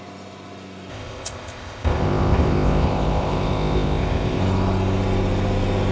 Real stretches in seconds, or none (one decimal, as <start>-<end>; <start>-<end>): 0.0-0.9; 4.4-5.9